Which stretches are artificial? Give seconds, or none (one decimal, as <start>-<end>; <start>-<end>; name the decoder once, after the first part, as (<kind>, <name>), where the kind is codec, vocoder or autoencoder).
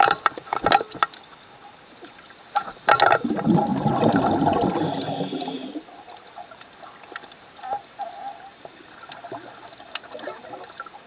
none